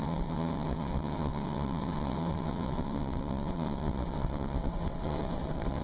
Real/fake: fake